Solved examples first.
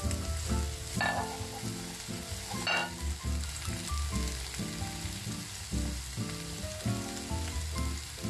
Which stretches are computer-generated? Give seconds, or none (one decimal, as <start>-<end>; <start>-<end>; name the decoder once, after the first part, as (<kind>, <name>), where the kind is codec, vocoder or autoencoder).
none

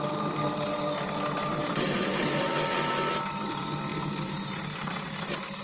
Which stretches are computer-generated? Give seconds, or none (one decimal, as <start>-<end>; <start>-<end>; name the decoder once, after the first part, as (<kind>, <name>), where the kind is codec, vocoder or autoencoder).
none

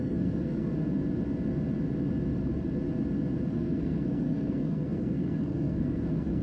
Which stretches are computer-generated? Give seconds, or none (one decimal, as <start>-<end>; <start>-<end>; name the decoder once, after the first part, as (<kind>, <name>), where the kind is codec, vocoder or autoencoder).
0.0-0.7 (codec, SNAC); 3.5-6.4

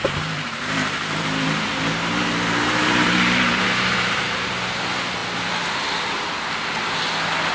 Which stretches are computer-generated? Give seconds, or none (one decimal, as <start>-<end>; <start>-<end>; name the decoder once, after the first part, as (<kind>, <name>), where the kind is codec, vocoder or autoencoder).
0.0-4.5 (vocoder, BigVGAN v2)